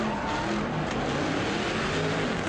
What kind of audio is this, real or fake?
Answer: real